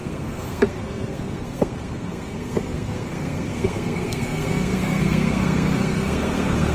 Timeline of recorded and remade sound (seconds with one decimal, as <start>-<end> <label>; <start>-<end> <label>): 0.0-6.7 remade